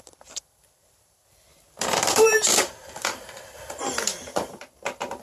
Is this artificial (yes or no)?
yes